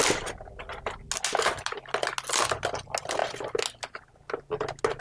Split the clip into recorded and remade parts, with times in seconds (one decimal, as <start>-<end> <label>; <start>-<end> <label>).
0.0-5.0 recorded